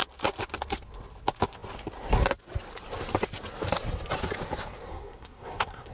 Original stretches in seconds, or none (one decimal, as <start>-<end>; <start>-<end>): 0.0-4.9